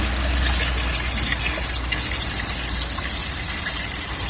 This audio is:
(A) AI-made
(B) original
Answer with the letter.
B